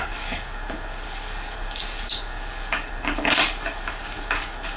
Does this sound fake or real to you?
fake